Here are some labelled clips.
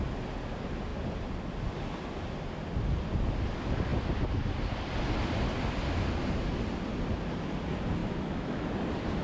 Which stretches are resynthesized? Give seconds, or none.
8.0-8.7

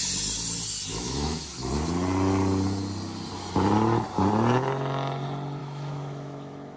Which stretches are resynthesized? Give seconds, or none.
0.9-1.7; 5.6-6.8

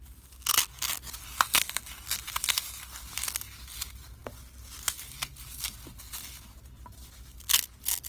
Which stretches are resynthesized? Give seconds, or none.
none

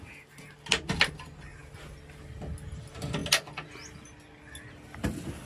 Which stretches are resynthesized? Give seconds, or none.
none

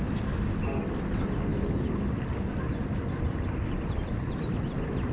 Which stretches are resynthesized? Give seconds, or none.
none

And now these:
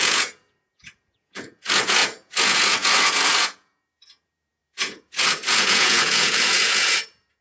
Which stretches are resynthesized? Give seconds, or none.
0.0-7.4